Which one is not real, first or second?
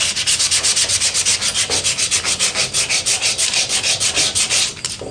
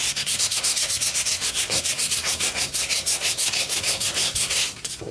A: second